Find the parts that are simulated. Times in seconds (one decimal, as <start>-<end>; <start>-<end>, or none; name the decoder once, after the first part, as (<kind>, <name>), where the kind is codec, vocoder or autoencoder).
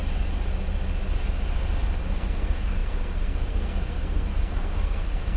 2.1-5.4 (codec, SNAC)